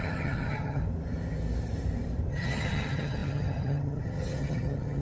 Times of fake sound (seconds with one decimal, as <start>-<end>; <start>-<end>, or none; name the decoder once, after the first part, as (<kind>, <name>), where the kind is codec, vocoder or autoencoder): 0.0-0.8 (vocoder, HiFi-GAN); 2.3-5.0